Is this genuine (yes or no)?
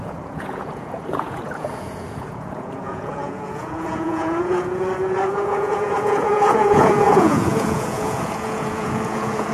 no